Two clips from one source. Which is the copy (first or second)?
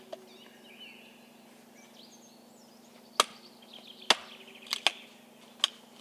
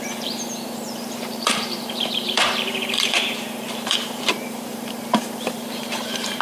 second